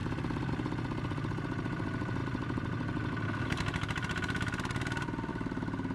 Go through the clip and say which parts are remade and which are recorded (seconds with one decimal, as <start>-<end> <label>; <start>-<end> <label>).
0.0-0.5 remade; 0.5-5.9 recorded